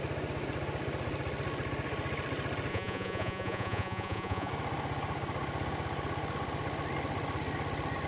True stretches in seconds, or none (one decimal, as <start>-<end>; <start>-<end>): 0.0-2.7; 4.5-8.1